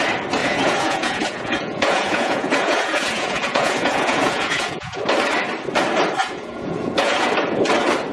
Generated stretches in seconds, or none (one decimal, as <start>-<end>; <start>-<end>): 0.4-5.0; 6.2-7.3